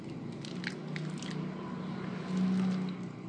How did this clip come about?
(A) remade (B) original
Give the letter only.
B